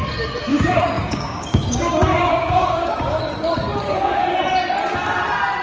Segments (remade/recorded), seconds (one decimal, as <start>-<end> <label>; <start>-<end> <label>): 0.0-0.5 recorded; 0.5-3.2 remade; 3.2-3.8 recorded; 3.8-4.4 remade; 4.4-5.6 recorded

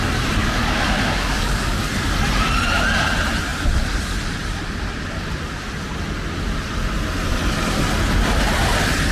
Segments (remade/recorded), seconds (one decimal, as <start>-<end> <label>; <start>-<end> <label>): 0.0-0.4 recorded; 0.4-1.8 remade; 1.8-9.1 recorded

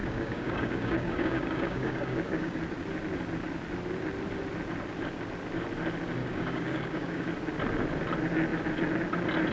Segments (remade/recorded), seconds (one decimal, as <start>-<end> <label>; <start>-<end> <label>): 0.0-2.6 remade; 2.6-6.2 recorded; 6.2-7.3 remade; 7.3-9.5 recorded

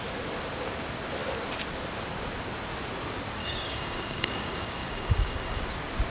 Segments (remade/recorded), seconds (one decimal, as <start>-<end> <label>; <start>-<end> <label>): 0.0-3.4 recorded; 3.4-5.6 remade; 5.6-6.1 recorded

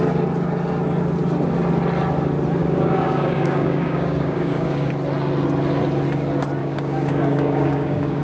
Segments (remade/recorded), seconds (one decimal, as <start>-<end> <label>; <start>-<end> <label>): 0.0-2.6 recorded; 2.6-4.9 remade; 4.9-6.6 recorded; 6.6-8.2 remade

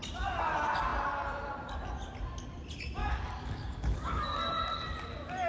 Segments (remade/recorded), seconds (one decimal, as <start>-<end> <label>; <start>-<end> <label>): 0.0-3.0 recorded; 3.0-4.2 remade; 4.2-5.5 recorded

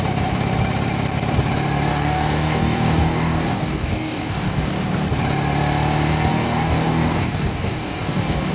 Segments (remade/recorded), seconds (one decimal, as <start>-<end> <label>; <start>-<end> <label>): 0.0-1.9 recorded; 1.9-4.6 remade; 4.6-6.3 recorded; 6.3-8.5 remade

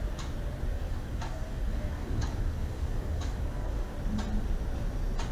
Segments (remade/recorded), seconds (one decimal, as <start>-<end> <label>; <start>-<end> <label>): 0.0-0.7 recorded; 0.7-3.9 remade; 3.9-5.3 recorded